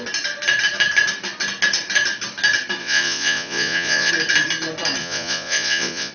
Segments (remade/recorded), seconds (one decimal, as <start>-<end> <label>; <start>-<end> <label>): 0.0-2.8 recorded; 2.8-4.1 remade; 4.1-5.0 recorded; 5.0-6.1 remade